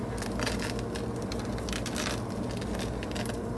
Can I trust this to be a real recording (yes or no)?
yes